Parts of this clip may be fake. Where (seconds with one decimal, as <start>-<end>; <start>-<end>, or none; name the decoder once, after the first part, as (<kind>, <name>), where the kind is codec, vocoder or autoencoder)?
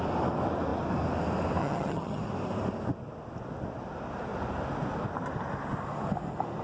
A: 1.6-2.2 (vocoder, HiFi-GAN)